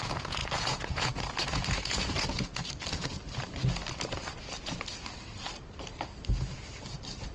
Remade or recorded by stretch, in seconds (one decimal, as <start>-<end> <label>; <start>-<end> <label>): 0.0-2.6 remade; 2.6-7.3 recorded